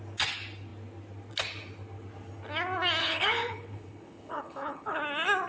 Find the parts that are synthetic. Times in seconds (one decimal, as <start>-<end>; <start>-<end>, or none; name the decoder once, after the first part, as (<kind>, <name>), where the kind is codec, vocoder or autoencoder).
3.0-5.0 (codec, HILCodec)